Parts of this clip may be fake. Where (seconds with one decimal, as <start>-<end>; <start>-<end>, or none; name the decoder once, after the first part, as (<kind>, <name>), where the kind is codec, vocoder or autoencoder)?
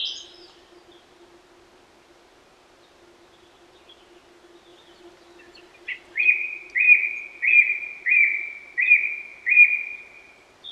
none